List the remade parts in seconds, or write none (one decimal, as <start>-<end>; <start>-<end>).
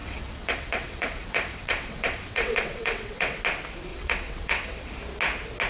0.0-3.4; 3.9-4.9